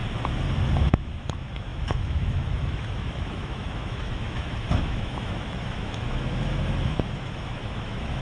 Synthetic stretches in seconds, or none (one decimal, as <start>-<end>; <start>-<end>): 0.8-8.2